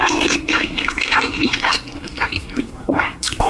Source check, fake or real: fake